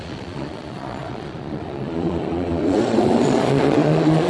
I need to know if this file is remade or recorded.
remade